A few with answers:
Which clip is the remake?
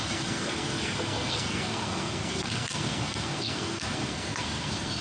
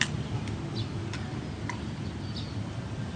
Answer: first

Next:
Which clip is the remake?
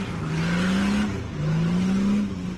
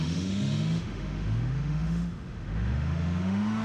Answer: second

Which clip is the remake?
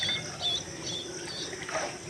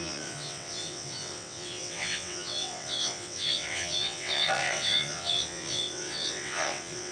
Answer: second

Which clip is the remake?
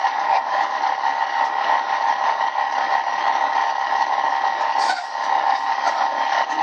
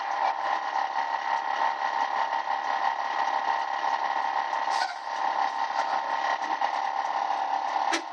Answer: first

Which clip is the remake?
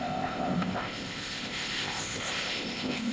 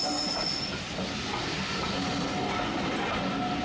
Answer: first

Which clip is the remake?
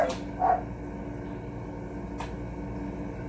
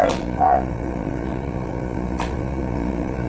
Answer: second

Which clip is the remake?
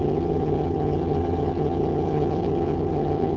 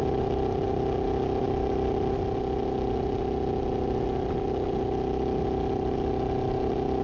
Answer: first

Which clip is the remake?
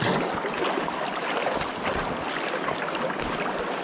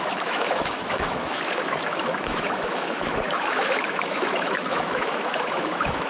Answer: second